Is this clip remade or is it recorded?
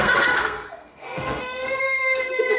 remade